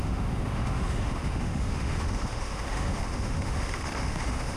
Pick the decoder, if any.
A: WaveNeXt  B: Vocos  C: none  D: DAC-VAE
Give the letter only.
D